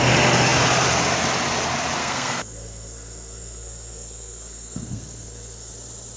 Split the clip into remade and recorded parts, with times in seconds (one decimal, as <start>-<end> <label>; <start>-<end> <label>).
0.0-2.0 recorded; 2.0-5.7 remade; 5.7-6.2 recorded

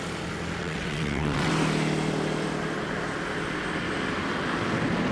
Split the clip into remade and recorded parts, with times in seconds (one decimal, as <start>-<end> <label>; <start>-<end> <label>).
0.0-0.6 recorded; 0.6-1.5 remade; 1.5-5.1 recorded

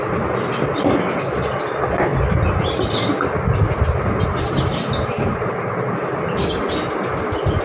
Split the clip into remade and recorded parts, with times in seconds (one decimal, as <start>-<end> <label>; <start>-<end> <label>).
0.0-7.6 recorded